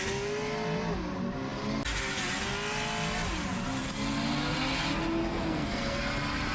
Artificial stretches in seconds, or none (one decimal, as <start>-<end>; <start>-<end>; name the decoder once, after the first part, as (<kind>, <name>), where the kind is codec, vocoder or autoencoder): 5.3-6.0 (codec, SNAC)